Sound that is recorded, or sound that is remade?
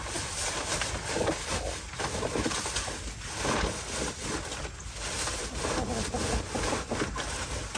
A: recorded